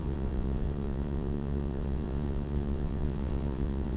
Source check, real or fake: fake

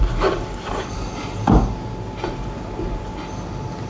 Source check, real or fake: real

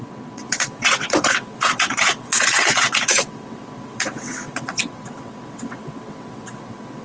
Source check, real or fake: fake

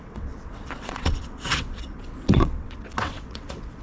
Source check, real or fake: fake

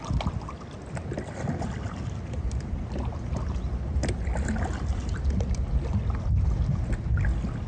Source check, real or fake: real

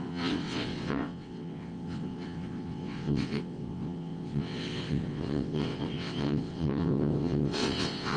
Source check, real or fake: fake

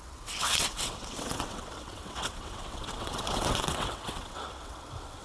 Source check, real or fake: fake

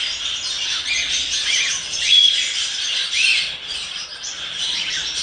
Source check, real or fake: real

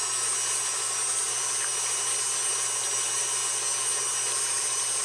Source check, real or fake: real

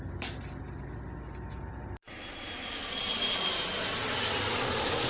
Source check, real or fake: real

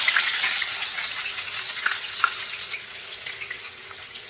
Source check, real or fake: fake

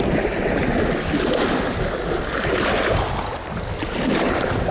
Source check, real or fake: real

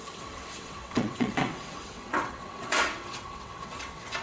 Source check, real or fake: fake